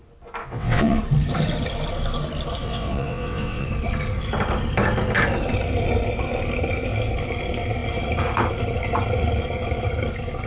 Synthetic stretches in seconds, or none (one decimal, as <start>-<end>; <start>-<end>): 0.4-1.0; 2.6-3.7

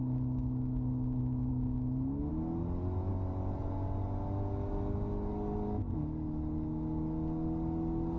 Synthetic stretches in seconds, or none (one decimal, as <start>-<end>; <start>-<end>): none

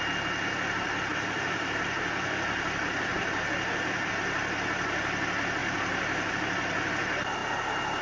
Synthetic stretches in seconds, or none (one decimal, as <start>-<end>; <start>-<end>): 1.1-4.1; 5.6-6.3

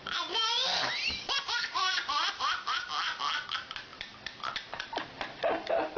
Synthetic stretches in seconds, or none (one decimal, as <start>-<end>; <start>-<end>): 0.0-6.0